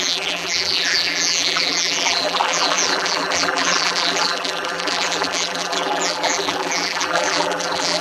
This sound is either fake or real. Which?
fake